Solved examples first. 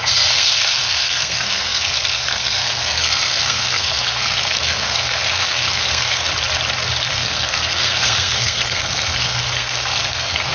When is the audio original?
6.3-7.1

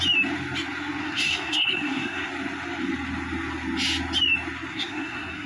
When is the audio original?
0.0-1.0; 2.3-4.7

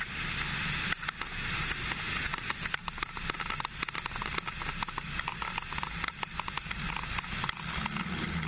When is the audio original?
0.0-8.5

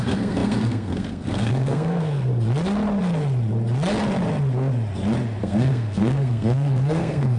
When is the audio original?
2.3-5.4

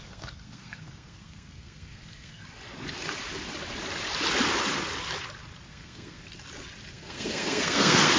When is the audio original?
2.4-5.7; 6.2-6.9

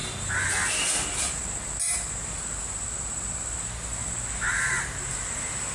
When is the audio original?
0.0-5.7

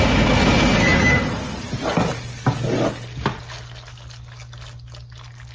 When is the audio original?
0.0-5.5

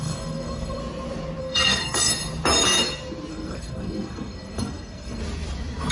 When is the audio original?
0.8-1.4; 2.1-3.3; 5.2-5.9